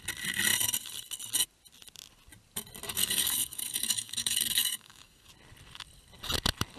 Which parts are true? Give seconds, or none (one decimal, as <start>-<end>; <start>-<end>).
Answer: 0.0-3.0; 5.3-6.8